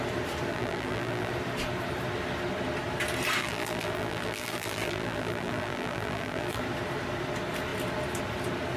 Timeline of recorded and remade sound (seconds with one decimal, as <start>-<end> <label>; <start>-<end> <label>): 0.0-0.5 recorded; 0.5-1.3 remade; 1.3-3.4 recorded; 3.4-6.6 remade; 6.6-8.8 recorded